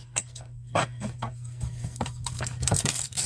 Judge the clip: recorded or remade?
remade